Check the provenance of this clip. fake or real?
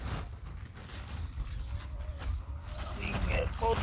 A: real